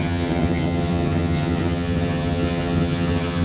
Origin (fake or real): fake